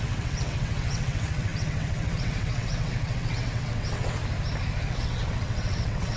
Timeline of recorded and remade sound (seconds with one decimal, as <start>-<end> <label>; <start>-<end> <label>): 0.0-4.2 remade; 4.2-4.9 recorded; 4.9-6.2 remade